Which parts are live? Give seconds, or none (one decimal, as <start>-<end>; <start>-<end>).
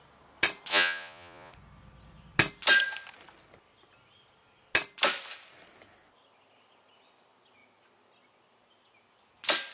0.0-0.7; 1.5-9.7